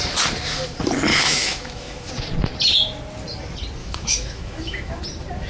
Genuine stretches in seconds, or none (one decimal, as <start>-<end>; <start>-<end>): 0.0-1.1; 2.1-3.8; 5.0-5.5